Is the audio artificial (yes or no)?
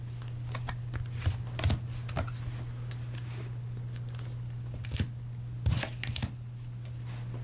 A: no